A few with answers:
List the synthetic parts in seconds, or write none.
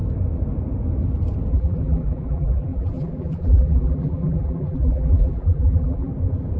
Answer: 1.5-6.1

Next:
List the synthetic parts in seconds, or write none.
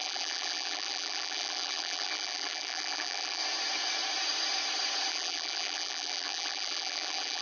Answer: 0.0-3.4; 5.1-7.4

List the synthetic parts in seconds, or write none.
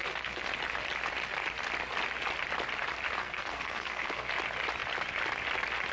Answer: 0.0-0.5; 3.2-4.3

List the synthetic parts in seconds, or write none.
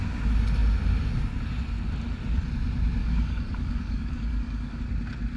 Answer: 3.0-4.8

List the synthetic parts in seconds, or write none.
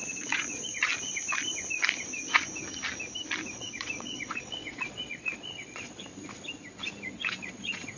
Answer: 0.0-0.9; 3.5-6.1; 7.1-8.0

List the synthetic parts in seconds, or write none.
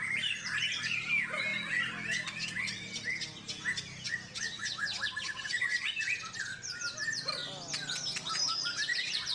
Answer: 0.0-7.4; 8.3-9.3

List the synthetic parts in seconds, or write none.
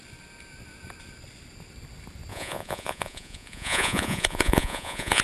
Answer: 2.3-5.2